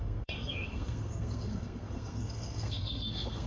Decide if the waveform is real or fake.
fake